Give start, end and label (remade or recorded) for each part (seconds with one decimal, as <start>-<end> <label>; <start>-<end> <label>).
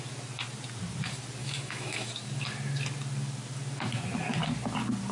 0.0-1.4 recorded; 1.4-2.1 remade; 2.1-5.1 recorded